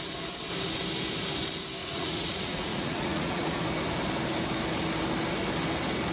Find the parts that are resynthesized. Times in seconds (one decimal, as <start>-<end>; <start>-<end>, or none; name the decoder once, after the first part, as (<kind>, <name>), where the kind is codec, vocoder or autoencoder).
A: 1.8-3.6 (vocoder, Vocos)